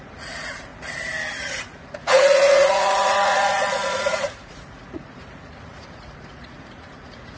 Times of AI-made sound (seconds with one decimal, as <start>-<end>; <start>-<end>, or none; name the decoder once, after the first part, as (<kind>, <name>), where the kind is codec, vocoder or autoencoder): 0.0-0.7 (vocoder, Vocos); 1.5-7.4